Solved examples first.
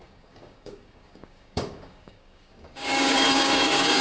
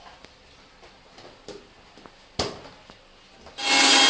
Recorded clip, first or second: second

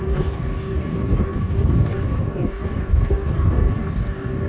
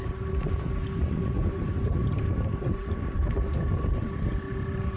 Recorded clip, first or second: second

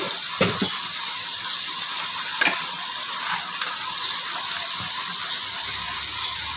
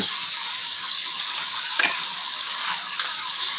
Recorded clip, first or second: first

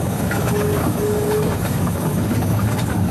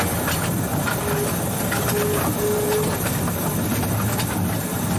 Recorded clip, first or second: second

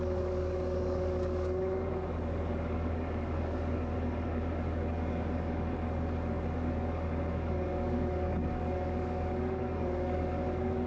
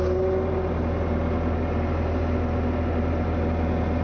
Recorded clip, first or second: second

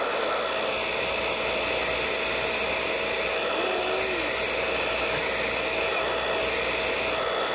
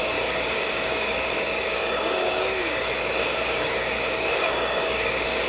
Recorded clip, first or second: first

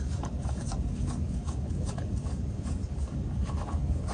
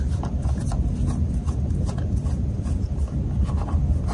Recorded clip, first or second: second